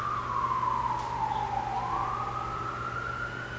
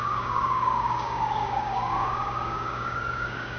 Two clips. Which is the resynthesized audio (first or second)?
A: second